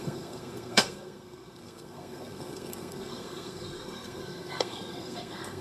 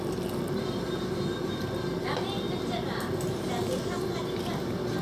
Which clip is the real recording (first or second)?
second